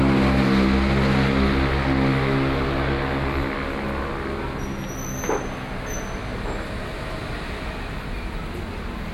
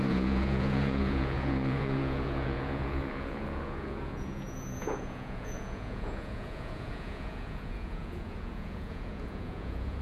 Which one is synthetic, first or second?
second